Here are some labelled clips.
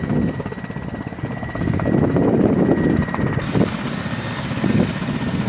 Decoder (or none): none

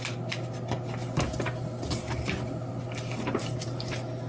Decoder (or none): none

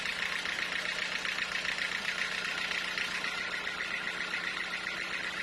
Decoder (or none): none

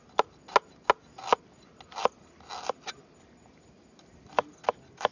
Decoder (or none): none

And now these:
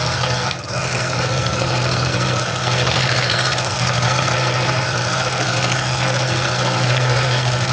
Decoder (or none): codec, SNAC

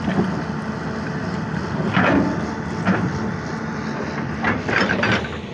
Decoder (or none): none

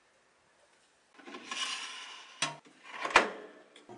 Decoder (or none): none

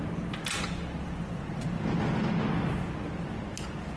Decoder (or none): none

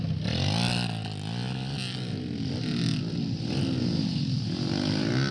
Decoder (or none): none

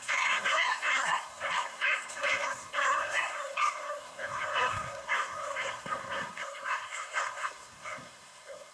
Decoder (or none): codec, SNAC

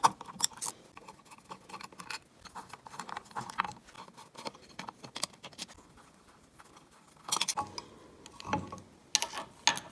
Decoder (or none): none